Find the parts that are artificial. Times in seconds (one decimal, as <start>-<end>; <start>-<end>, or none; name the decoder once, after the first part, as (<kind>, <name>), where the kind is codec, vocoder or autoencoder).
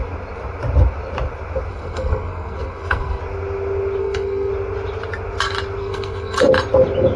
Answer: 1.7-3.2 (codec, SNAC); 4.0-4.5; 5.8-6.4